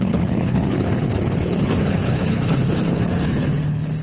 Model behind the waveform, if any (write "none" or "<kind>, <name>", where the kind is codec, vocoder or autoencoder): codec, HILCodec